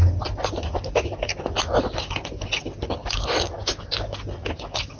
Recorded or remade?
recorded